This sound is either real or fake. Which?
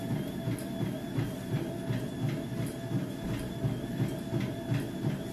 real